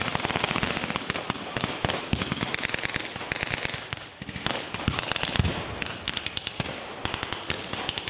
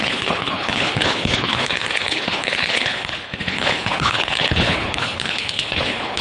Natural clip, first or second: first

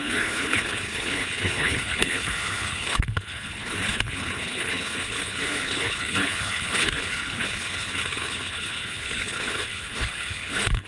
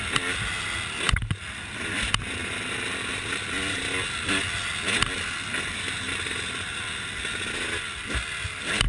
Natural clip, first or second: second